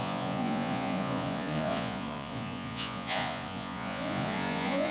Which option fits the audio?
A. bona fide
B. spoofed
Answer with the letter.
B